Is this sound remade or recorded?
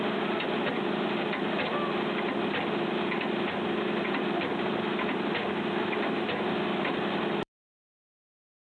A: remade